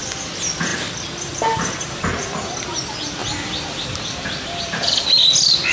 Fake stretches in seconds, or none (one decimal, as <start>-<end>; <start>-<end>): none